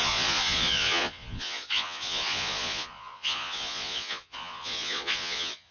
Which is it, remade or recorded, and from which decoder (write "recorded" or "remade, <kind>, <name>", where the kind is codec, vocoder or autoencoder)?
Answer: remade, vocoder, Vocos